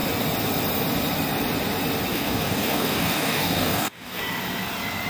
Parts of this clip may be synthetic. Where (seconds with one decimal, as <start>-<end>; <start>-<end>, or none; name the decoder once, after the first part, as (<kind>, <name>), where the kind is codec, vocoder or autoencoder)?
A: 2.1-4.2 (codec, DAC)